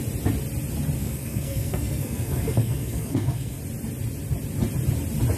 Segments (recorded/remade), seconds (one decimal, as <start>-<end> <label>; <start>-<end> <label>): 0.0-1.0 recorded; 1.0-3.6 remade; 3.6-5.4 recorded